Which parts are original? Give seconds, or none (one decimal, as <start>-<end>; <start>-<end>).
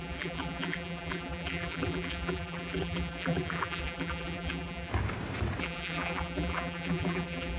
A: 4.9-5.6